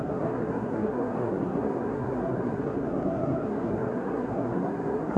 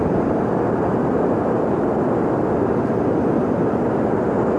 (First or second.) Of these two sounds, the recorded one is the second